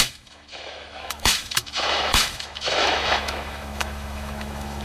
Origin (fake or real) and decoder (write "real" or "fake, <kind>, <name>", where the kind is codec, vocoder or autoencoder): fake, autoencoder, DAC-VAE